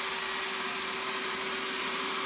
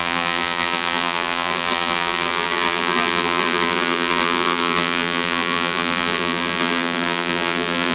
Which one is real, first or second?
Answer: first